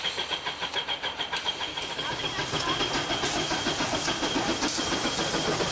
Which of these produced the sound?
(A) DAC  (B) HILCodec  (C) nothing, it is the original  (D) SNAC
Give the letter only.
C